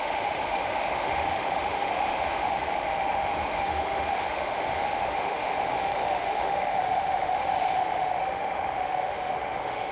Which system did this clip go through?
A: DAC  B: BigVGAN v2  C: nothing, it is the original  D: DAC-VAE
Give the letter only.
D